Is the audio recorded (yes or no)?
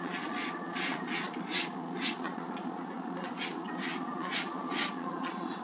no